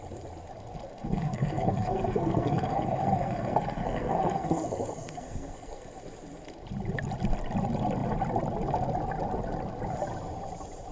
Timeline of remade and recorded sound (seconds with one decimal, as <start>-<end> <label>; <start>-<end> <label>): 0.0-0.9 recorded; 0.9-6.0 remade; 6.0-10.9 recorded